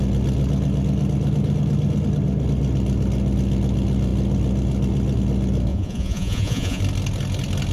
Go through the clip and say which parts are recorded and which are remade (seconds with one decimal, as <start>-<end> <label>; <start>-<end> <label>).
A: 0.0-5.7 recorded; 5.7-6.8 remade; 6.8-7.7 recorded